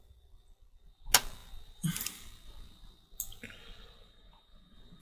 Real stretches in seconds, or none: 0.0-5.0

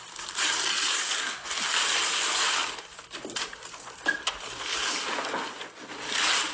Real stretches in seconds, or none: 0.0-6.5